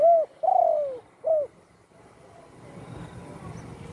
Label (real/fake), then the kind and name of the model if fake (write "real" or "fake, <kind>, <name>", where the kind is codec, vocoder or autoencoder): real